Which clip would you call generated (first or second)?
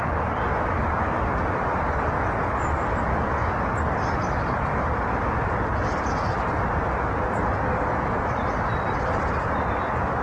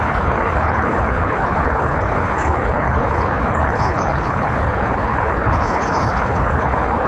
second